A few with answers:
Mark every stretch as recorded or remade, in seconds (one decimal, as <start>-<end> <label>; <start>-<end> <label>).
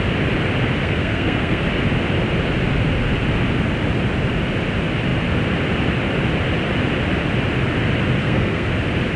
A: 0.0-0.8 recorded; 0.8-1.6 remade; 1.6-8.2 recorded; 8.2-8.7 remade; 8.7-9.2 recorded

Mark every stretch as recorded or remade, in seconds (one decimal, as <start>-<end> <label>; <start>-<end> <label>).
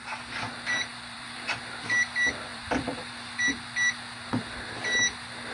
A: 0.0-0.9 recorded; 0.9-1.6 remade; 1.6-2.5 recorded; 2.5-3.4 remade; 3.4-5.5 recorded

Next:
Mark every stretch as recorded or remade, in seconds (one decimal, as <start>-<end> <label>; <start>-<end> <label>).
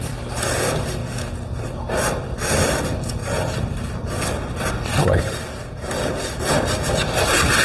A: 0.0-1.0 remade; 1.0-1.5 recorded; 1.5-3.2 remade; 3.2-6.9 recorded; 6.9-7.6 remade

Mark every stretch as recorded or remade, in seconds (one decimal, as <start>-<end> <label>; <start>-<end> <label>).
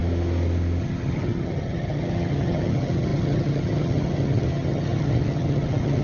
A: 0.0-0.8 recorded; 0.8-6.0 remade